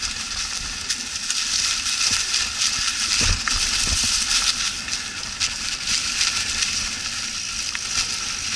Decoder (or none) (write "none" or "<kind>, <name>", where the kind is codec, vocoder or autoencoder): none